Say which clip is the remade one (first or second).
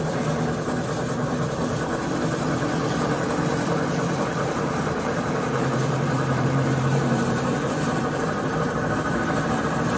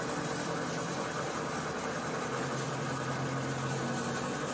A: first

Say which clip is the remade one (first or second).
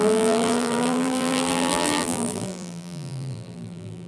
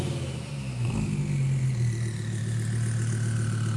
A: first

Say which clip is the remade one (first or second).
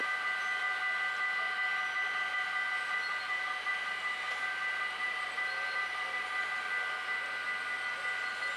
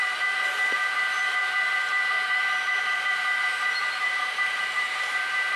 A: second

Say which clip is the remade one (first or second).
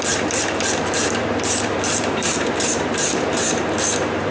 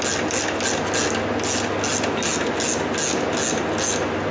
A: first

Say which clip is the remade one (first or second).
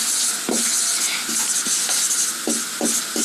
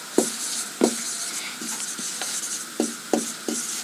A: second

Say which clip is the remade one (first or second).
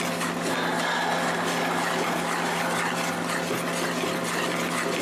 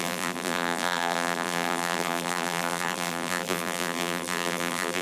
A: second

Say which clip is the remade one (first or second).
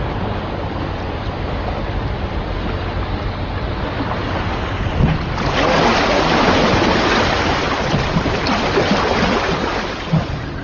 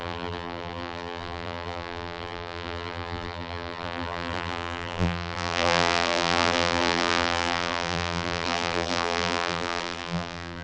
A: second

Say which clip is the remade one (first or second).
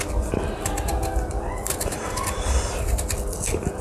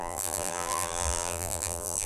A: second